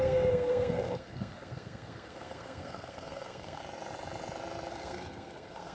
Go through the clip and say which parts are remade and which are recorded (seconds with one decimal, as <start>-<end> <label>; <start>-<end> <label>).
0.0-3.6 remade; 3.6-4.7 recorded; 4.7-5.7 remade